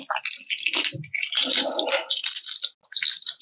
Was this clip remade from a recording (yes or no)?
no